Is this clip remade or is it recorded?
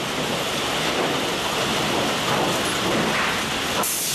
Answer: recorded